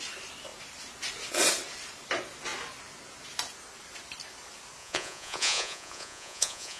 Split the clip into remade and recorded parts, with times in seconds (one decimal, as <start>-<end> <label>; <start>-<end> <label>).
0.0-4.8 recorded; 4.8-6.8 remade